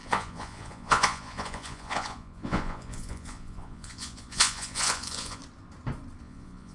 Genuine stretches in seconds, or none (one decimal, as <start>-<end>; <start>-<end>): 5.4-6.2